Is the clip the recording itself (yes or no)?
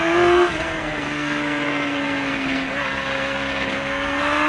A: no